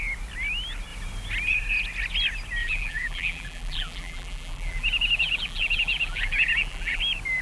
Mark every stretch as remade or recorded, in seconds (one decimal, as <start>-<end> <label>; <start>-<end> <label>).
0.0-2.6 recorded; 2.6-7.0 remade; 7.0-7.4 recorded